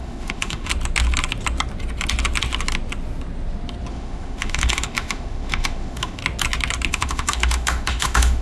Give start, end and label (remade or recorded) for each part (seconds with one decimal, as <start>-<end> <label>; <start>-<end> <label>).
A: 0.0-0.7 remade; 0.7-3.9 recorded; 3.9-6.2 remade; 6.2-6.9 recorded; 6.9-8.4 remade